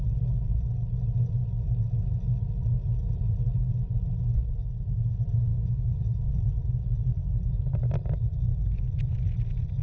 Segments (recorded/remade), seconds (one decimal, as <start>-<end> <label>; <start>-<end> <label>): 0.0-5.5 recorded; 5.5-6.0 remade; 6.0-9.8 recorded